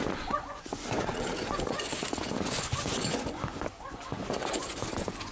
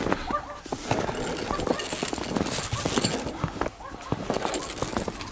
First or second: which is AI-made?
first